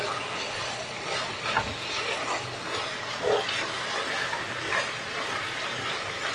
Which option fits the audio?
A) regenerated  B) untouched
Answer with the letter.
B